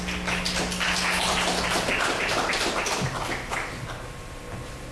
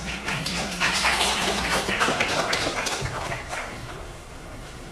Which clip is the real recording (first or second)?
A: first